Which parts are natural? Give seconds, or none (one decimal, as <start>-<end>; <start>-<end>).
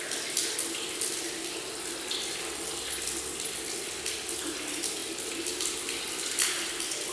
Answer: 0.0-7.1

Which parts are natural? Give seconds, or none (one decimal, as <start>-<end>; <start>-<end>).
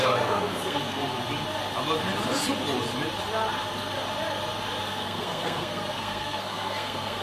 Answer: 1.0-4.8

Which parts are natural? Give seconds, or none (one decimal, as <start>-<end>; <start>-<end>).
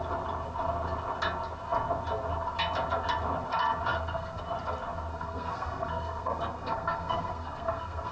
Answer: 0.0-3.9; 4.4-5.1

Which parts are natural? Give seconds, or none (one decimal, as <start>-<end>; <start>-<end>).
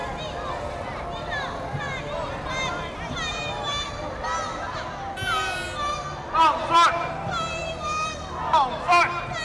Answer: 0.0-9.4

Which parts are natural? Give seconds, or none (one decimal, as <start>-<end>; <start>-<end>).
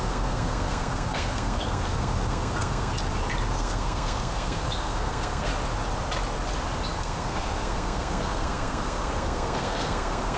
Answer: 2.9-3.5; 5.5-7.0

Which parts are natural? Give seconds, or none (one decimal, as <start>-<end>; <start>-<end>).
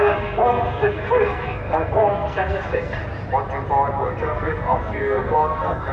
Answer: 3.0-4.2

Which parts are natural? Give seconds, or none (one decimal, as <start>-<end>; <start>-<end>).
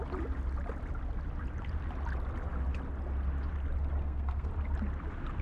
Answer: 0.0-4.0; 4.5-5.4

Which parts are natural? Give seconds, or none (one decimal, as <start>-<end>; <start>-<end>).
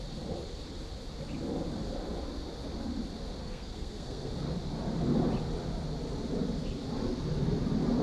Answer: 0.0-3.4; 4.3-8.0